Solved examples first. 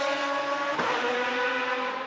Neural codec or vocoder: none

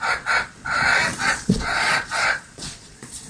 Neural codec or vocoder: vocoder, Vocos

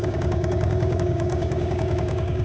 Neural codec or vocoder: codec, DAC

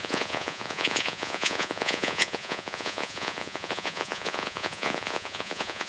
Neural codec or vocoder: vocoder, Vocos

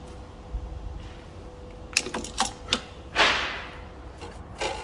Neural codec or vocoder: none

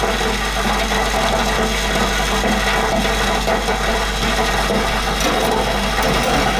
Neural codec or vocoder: none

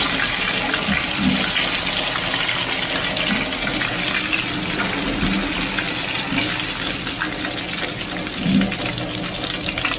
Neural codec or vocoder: none